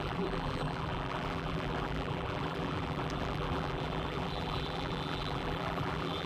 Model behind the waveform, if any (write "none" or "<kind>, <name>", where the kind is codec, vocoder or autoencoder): vocoder, BigVGAN v2